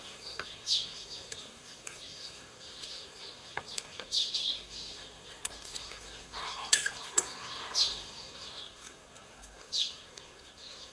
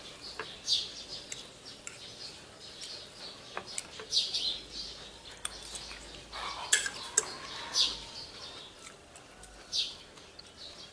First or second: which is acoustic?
second